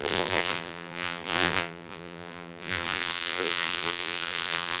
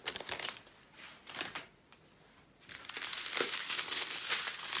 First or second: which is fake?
first